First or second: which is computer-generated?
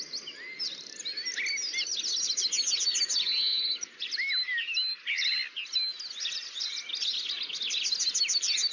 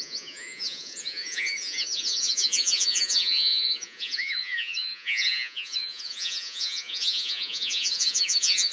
second